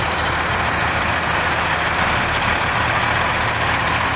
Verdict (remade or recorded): recorded